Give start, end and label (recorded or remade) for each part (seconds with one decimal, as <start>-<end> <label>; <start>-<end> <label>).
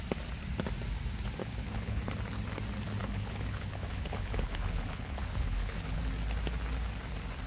0.0-1.4 recorded; 1.4-2.0 remade; 2.0-3.0 recorded; 3.0-6.0 remade; 6.0-7.5 recorded